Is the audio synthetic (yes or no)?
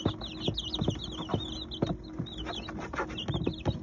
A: no